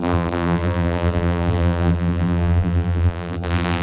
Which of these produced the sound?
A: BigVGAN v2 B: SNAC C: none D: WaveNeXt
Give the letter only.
A